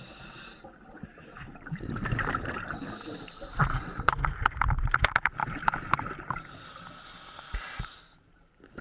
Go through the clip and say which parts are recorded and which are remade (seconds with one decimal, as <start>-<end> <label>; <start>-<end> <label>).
0.0-8.8 remade